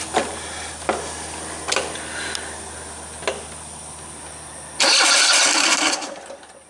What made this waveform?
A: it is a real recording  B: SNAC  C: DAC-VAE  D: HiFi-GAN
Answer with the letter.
A